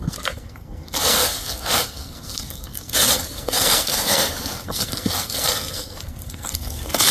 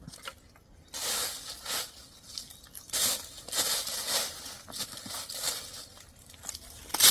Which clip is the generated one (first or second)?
first